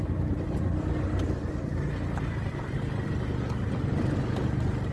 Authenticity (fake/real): real